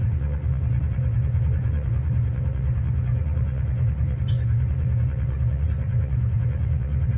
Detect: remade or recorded remade